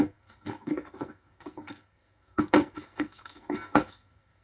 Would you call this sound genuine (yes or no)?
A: no